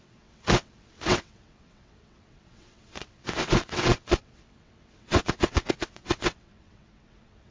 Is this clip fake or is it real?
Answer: fake